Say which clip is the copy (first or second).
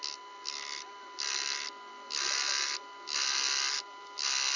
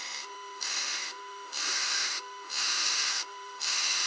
second